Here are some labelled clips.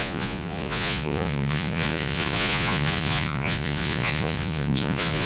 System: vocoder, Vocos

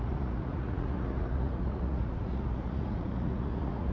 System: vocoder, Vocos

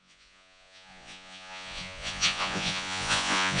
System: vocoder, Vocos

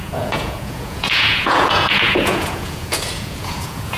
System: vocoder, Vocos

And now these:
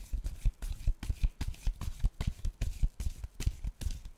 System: none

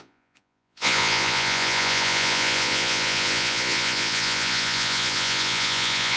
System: vocoder, Vocos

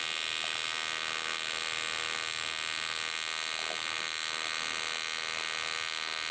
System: none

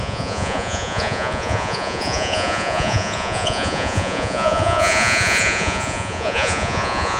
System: vocoder, Vocos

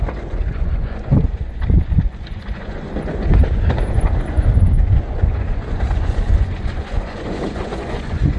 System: vocoder, Vocos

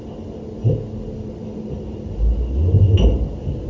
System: none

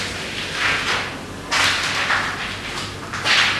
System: none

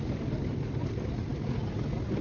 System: none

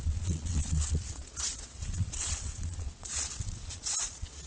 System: vocoder, Vocos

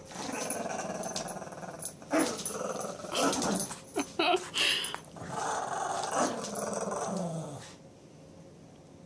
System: none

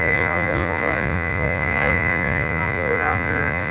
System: vocoder, Vocos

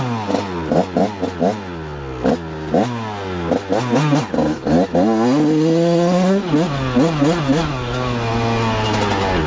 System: none